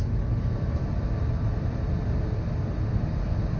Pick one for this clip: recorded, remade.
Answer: recorded